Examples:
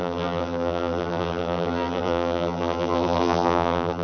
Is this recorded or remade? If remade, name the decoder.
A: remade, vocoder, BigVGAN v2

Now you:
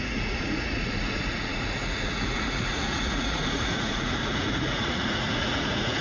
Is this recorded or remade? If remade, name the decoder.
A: remade, vocoder, Vocos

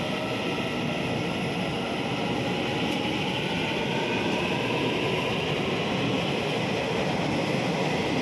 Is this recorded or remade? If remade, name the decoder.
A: recorded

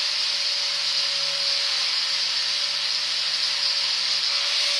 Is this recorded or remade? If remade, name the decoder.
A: recorded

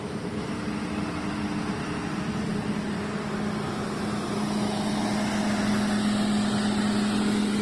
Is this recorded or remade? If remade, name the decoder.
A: recorded